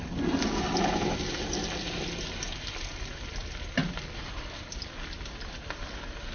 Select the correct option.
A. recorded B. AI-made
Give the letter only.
A